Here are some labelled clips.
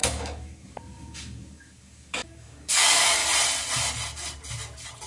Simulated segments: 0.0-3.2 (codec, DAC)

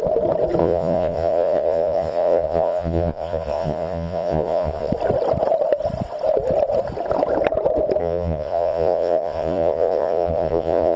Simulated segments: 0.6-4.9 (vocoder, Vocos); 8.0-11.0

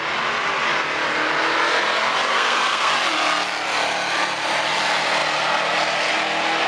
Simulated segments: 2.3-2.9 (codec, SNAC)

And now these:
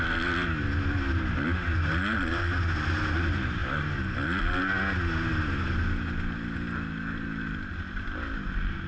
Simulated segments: none

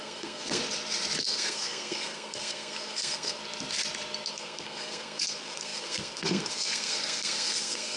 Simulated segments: 0.0-0.6 (codec, SNAC); 1.2-3.4; 4.3-8.0

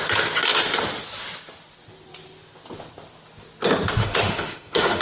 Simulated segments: 4.0-5.0 (autoencoder, DAC-VAE)

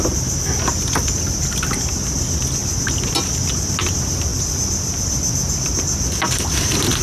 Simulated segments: none